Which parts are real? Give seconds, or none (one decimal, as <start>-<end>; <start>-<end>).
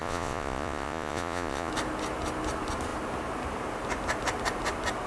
1.7-5.1